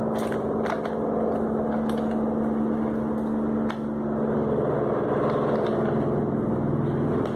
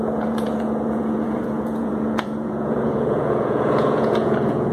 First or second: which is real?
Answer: first